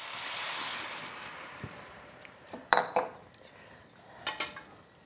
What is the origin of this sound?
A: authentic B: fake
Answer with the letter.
B